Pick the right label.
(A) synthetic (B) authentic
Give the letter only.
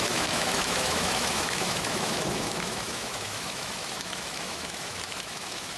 A